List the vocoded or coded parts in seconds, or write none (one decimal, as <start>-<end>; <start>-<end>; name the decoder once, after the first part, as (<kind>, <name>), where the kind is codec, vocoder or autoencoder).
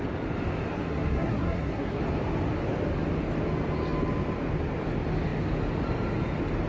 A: 0.7-2.0 (codec, SNAC)